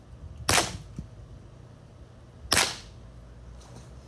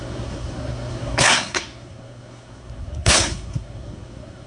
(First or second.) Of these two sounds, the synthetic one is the second